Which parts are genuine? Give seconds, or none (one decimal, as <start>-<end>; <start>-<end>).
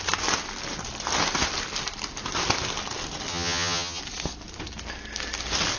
0.0-3.3; 4.0-5.8